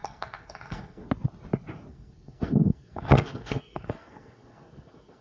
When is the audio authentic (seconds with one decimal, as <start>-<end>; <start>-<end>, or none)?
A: 1.1-1.9